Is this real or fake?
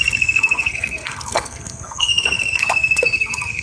fake